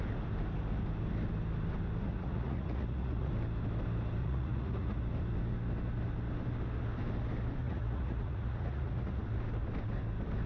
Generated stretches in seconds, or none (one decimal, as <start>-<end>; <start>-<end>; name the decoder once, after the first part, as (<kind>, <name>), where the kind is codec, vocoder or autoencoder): 2.1-3.3 (vocoder, Vocos); 4.2-5.0; 7.6-9.2